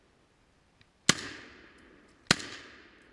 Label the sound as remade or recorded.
recorded